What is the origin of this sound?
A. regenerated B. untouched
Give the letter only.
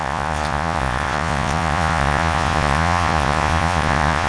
A